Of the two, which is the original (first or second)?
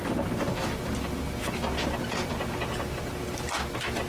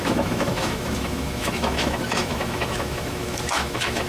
first